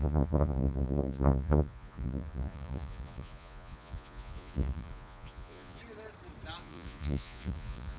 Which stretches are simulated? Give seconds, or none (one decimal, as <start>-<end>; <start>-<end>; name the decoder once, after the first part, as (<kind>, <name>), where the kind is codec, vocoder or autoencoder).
0.0-5.8 (vocoder, Vocos); 6.6-8.0